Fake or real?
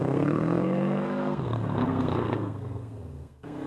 fake